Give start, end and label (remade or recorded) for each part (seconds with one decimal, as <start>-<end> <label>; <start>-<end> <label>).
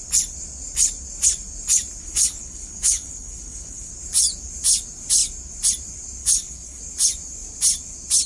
0.0-2.0 recorded; 2.0-3.9 remade; 3.9-6.2 recorded; 6.2-6.8 remade; 6.8-8.3 recorded